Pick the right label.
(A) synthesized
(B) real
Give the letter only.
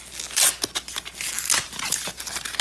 B